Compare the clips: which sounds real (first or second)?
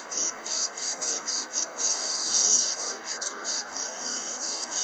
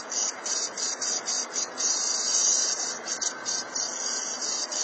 second